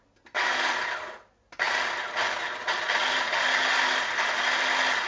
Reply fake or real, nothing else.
real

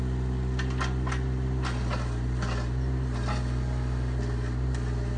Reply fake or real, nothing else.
real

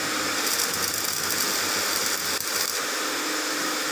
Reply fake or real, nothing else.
real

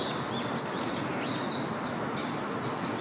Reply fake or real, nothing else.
real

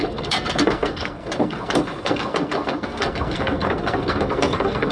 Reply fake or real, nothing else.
fake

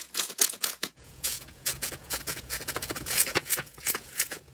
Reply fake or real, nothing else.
fake